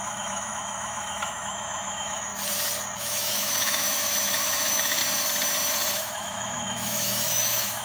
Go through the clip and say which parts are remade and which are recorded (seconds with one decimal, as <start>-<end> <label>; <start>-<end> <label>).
0.0-2.3 remade; 2.3-3.0 recorded; 3.0-5.0 remade; 5.0-5.9 recorded; 5.9-7.8 remade